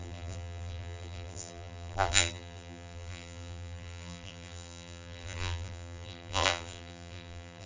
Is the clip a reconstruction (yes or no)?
yes